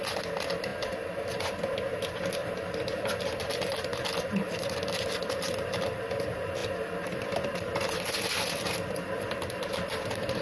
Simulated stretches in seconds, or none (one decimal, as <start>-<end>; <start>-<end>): none